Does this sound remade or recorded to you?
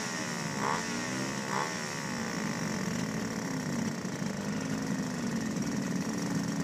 recorded